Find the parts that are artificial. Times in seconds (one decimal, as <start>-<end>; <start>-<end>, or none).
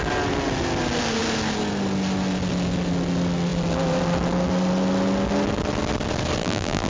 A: 6.4-6.9